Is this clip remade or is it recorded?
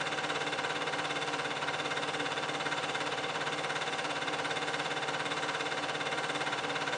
remade